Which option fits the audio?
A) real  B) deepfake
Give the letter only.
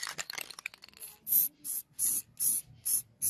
A